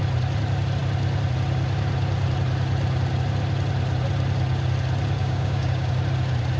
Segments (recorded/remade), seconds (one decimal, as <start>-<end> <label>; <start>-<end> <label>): 0.0-5.2 recorded; 5.2-5.9 remade; 5.9-6.6 recorded